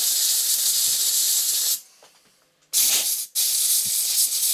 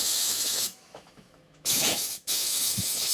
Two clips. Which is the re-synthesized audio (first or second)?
second